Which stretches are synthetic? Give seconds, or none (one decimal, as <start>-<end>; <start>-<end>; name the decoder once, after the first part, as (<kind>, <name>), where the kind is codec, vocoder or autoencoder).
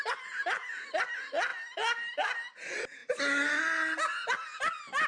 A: none